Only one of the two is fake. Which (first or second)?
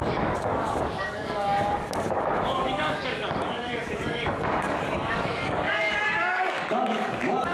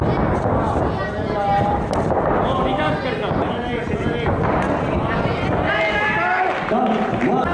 first